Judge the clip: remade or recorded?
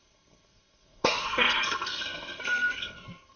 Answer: remade